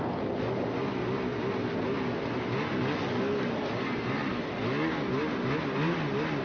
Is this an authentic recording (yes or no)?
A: yes